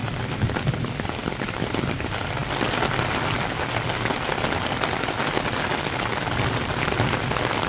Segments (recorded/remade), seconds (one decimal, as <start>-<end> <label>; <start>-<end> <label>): 0.0-7.7 recorded